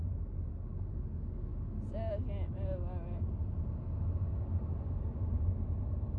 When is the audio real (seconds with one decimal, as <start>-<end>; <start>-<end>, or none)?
0.0-6.2